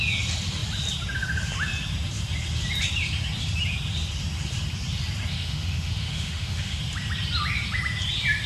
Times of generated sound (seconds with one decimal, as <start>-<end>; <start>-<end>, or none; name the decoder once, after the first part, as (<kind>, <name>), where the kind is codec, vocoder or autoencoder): 5.3-6.8 (autoencoder, DAC-VAE)